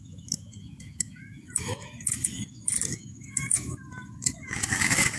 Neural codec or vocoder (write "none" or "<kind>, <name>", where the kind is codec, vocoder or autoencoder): autoencoder, DAC-VAE